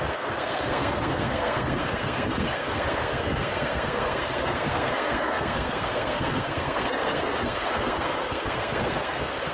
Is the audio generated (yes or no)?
yes